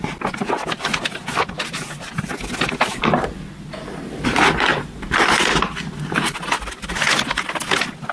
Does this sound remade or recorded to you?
recorded